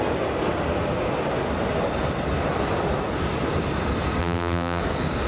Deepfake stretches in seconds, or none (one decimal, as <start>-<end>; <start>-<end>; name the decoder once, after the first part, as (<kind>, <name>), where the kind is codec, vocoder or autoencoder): 4.2-4.8 (vocoder, BigVGAN v2)